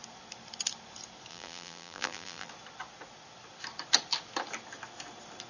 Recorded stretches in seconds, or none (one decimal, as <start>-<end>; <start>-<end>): 0.0-1.3; 2.5-5.5